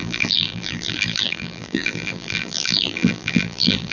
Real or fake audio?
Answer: fake